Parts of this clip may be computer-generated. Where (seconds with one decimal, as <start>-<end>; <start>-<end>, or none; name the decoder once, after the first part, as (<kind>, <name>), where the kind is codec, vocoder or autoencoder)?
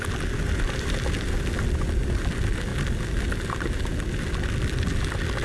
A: none